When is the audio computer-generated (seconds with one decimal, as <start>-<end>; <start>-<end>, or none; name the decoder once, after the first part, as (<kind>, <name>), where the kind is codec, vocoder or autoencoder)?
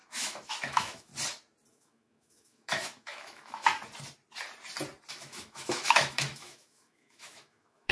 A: 0.0-1.1 (autoencoder, DAC-VAE); 1.7-3.7; 5.1-7.9